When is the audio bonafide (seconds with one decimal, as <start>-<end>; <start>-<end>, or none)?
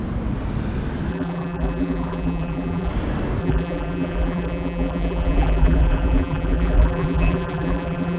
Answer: 0.0-1.1; 2.9-3.4